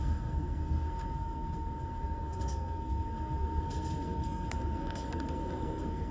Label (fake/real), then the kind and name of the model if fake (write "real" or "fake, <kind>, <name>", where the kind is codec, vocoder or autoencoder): fake, codec, SNAC